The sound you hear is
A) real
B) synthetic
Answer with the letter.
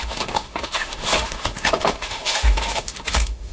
B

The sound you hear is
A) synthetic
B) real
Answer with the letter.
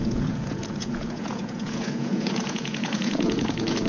A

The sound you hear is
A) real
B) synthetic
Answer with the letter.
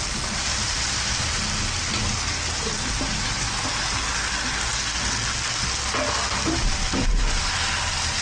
A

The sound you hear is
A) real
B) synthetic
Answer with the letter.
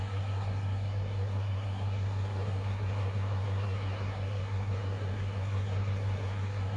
B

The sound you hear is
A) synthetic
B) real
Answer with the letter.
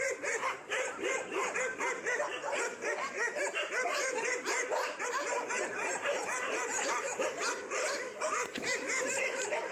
A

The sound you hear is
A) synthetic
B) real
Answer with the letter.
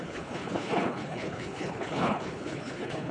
A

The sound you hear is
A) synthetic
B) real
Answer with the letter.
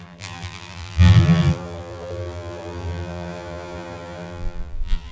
A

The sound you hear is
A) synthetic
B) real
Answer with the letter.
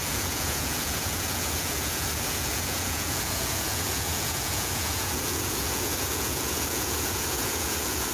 A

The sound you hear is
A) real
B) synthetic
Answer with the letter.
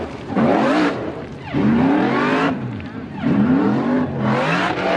B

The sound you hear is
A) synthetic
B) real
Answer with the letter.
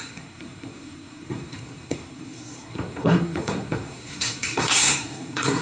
A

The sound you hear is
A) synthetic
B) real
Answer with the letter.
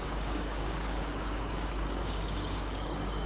A